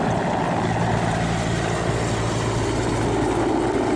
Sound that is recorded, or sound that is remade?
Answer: recorded